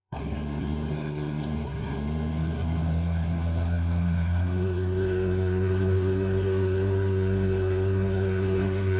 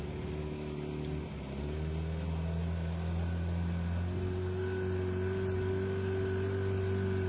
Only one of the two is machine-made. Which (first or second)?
first